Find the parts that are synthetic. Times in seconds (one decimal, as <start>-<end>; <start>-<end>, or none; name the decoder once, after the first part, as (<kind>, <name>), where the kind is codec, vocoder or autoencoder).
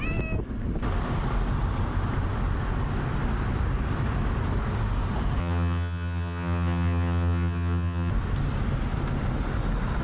5.4-8.1 (vocoder, HiFi-GAN)